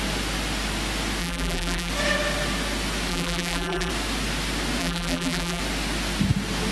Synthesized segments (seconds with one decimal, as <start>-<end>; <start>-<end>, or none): 1.2-1.9; 3.1-3.9; 4.8-5.6